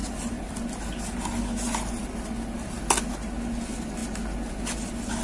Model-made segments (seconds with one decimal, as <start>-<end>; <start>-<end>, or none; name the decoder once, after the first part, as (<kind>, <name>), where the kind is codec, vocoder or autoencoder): none